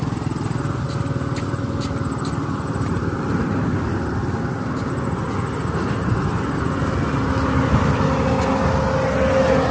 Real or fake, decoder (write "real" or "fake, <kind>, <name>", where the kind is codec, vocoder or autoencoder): real